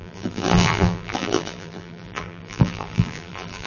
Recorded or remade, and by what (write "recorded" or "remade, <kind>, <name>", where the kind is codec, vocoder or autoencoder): remade, vocoder, BigVGAN v2